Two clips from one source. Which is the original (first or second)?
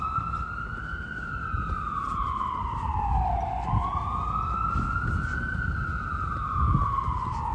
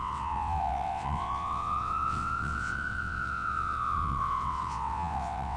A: first